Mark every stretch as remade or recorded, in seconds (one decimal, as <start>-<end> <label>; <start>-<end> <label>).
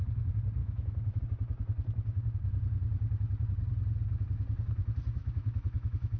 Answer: 0.0-0.6 recorded; 0.6-1.2 remade; 1.2-5.2 recorded; 5.2-6.2 remade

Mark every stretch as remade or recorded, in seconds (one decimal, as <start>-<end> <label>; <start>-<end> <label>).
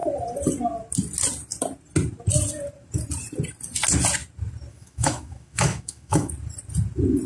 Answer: 0.0-4.7 recorded; 4.7-6.3 remade; 6.3-7.3 recorded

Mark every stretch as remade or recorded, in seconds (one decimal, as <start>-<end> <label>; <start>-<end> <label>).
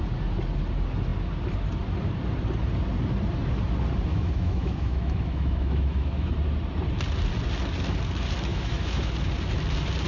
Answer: 0.0-4.1 recorded; 4.1-6.3 remade; 6.3-8.5 recorded; 8.5-9.1 remade; 9.1-10.1 recorded